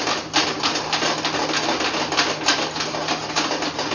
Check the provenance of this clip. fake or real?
real